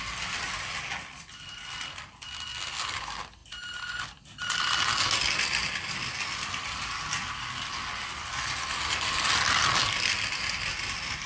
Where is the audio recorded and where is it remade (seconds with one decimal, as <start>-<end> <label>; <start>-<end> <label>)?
0.0-11.3 recorded